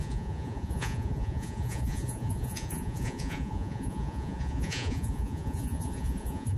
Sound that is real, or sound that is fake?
fake